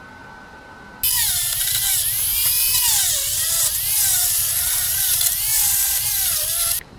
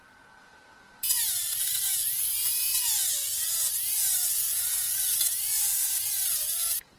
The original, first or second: first